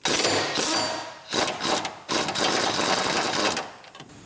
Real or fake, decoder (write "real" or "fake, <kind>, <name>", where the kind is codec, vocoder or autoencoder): real